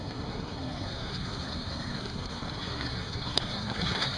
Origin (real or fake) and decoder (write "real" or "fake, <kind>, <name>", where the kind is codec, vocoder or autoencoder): fake, codec, SNAC